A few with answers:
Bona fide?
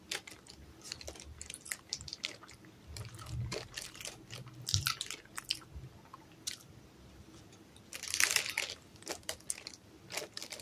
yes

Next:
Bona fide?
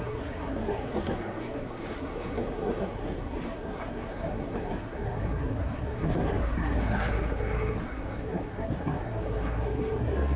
no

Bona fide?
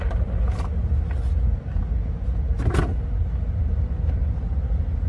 yes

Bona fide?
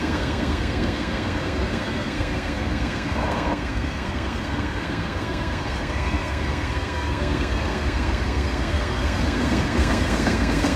no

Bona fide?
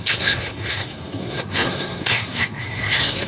no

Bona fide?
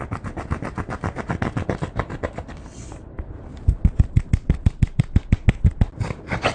yes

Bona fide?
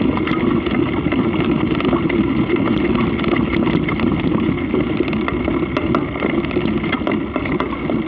yes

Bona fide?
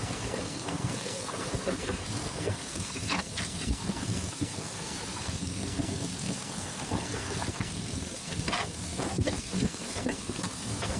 no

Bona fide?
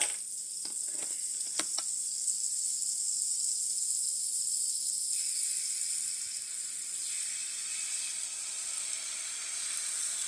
yes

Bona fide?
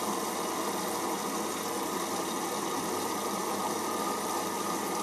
yes